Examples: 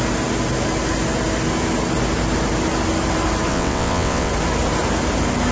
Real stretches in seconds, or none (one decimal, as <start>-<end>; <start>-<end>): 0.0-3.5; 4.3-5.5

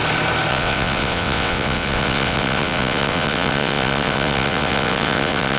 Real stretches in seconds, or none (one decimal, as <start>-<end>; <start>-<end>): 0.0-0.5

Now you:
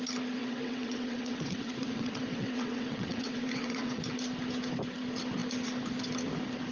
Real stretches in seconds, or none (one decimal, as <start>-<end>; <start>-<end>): 0.0-0.4; 4.0-6.7

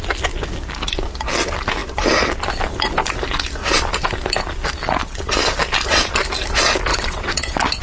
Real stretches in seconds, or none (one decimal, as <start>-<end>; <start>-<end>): 0.0-6.9

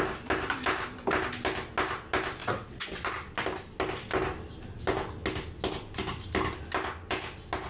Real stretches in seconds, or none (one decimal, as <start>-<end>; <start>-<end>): 0.0-2.4; 3.1-7.7

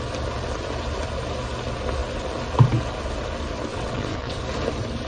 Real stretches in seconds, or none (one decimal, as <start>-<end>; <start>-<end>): 0.0-3.7; 4.4-5.1